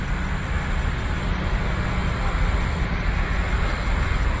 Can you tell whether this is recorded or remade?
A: recorded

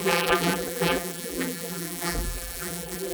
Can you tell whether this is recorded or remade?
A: remade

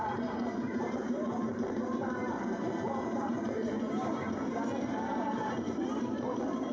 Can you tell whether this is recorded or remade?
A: remade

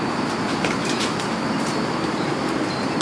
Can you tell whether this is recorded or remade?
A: remade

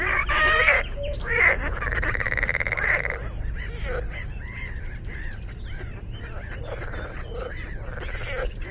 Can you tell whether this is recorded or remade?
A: remade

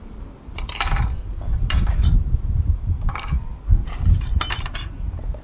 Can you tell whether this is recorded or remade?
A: remade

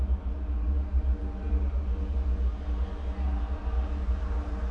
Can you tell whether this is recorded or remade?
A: recorded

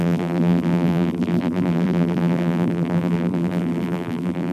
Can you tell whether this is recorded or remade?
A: remade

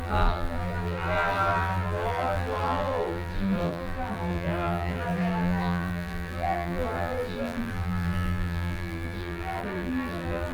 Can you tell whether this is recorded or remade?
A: remade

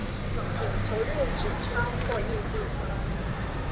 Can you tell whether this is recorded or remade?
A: remade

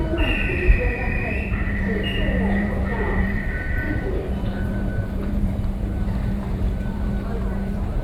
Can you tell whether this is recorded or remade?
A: remade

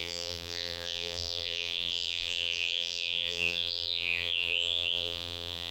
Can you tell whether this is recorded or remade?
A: remade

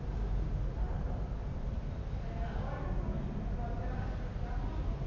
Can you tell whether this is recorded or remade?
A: recorded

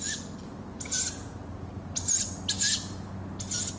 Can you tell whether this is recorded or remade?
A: recorded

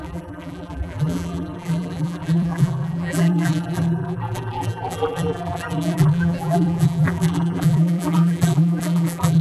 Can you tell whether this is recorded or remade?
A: remade